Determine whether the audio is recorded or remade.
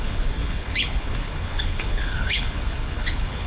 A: remade